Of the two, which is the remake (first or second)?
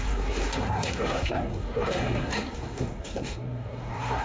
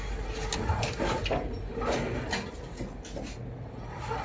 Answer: first